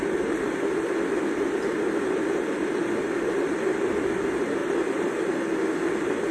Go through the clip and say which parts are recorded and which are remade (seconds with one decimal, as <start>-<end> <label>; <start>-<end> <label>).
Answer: 0.0-6.3 recorded